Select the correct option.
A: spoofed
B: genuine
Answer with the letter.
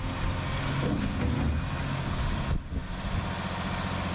B